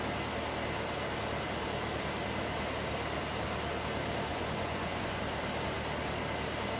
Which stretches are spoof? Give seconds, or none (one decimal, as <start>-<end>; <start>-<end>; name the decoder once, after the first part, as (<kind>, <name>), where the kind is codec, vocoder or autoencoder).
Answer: 4.3-5.2 (vocoder, Vocos)